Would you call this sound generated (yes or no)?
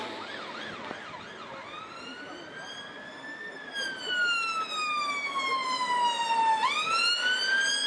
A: no